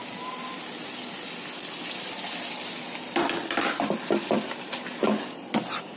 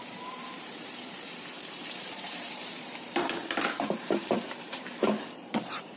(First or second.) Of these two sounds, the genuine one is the first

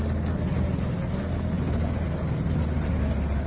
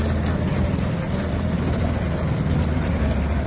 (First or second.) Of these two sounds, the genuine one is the first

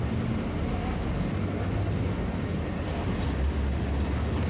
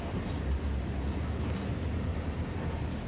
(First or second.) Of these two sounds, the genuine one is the first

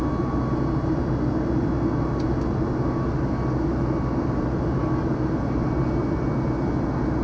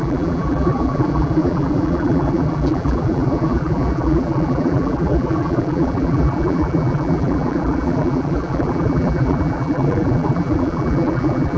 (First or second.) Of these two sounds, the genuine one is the first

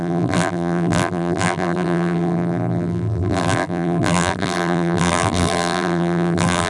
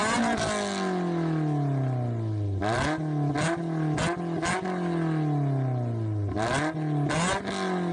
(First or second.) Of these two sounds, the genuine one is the second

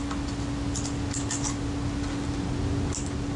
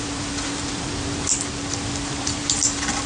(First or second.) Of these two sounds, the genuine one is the first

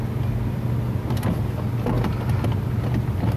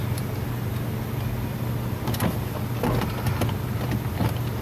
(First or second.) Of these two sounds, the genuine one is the first